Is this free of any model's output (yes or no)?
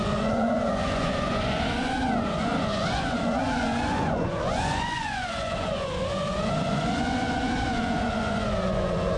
no